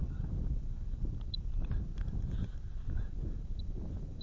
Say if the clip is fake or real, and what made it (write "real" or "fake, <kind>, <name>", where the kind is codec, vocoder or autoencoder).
real